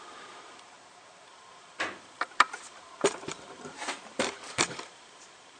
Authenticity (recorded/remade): remade